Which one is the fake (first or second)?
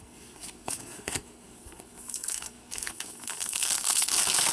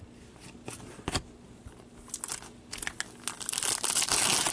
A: first